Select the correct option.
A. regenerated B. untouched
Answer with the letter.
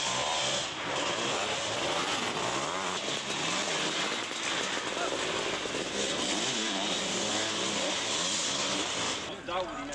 B